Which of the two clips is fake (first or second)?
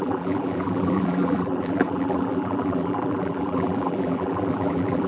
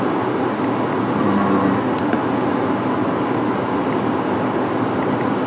first